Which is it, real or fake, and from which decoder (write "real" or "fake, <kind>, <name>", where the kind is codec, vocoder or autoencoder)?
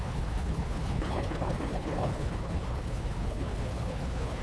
fake, codec, HILCodec